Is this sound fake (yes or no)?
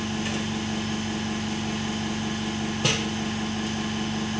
no